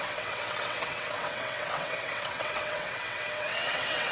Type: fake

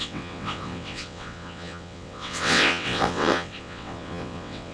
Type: fake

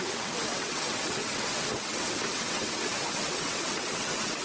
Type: fake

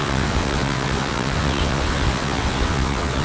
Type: fake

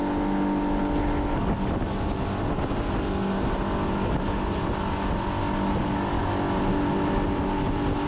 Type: real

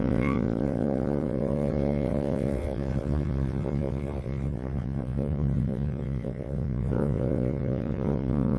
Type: fake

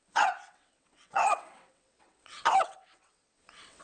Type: fake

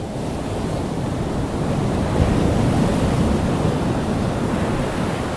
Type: real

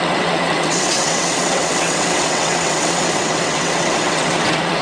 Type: fake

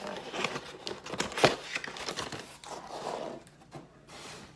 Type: real